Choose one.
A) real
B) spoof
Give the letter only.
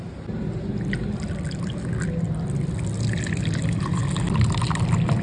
A